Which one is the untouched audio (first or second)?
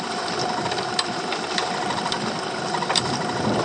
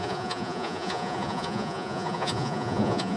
first